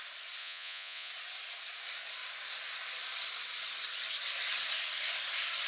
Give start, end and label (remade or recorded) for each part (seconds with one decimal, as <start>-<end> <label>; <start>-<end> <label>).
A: 0.0-0.4 recorded; 0.4-1.1 remade; 1.1-5.7 recorded